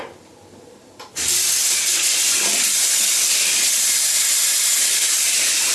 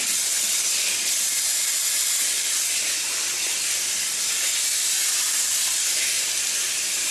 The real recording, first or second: second